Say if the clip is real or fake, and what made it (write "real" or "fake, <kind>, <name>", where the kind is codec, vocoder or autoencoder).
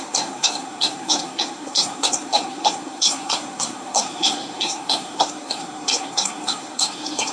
fake, codec, SNAC